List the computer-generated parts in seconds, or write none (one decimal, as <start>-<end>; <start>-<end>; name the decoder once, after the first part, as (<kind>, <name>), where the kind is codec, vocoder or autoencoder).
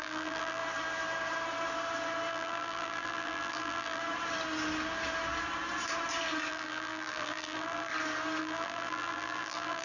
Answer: 0.0-0.6 (vocoder, BigVGAN v2); 2.3-4.0; 6.5-7.9; 8.4-9.8